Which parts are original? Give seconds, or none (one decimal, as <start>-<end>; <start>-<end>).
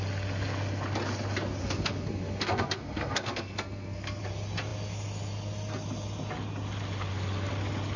0.0-1.6; 4.2-8.0